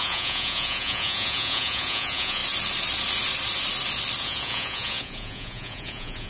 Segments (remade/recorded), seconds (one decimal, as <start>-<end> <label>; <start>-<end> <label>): 0.0-2.4 remade; 2.4-4.2 recorded; 4.2-6.3 remade